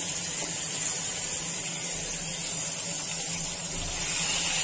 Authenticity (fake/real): real